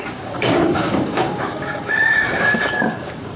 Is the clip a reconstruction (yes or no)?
yes